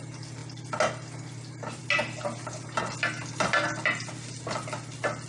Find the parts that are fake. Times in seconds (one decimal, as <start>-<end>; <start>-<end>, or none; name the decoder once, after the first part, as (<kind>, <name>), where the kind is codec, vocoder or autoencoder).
none